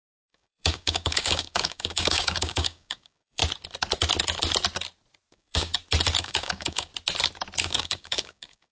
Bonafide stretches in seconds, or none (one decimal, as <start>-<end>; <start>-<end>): 3.4-5.3; 5.7-6.2; 6.9-7.6